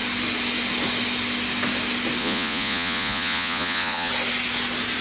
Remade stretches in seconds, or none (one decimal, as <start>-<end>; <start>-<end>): 2.2-4.1